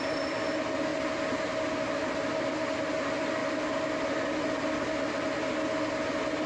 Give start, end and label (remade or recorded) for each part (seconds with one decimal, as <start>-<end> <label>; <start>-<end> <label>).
0.0-6.5 recorded